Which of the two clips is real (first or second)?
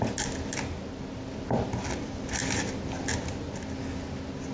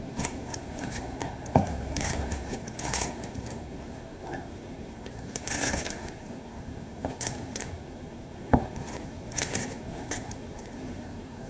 first